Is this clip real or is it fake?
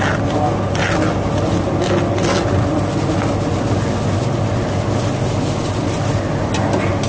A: real